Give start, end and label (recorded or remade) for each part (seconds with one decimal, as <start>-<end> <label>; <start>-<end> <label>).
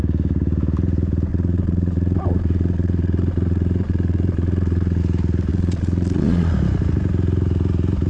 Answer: 0.0-1.3 recorded; 1.3-5.0 remade; 5.0-5.5 recorded; 5.5-6.5 remade; 6.5-8.1 recorded